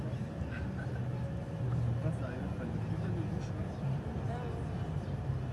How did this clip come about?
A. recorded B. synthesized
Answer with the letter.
A